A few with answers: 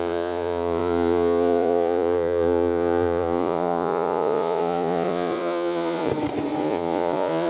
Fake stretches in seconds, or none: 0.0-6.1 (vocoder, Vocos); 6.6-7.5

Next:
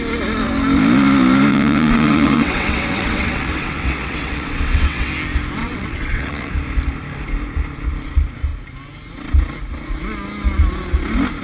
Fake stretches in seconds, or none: 1.5-5.1 (vocoder, WaveNeXt); 5.6-6.5

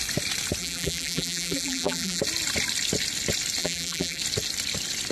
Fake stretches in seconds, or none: 0.6-2.2 (vocoder, BigVGAN v2); 3.6-4.2